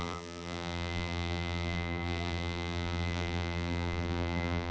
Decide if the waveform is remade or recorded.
remade